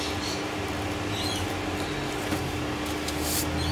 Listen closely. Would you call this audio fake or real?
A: real